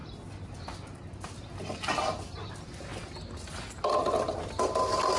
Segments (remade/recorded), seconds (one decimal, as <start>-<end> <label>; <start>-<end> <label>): 0.0-5.2 recorded